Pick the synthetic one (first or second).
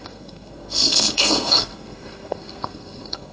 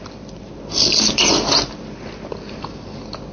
first